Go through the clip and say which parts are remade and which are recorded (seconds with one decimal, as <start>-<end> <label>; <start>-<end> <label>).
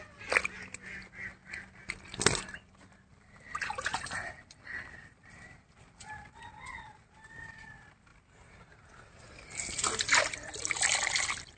0.0-11.6 recorded